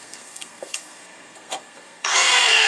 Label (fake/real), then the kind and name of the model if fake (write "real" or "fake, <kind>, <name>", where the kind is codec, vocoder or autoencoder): fake, codec, SNAC